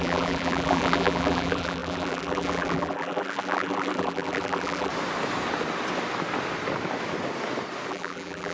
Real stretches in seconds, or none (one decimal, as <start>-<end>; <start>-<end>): 4.9-7.9